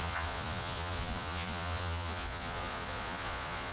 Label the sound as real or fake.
fake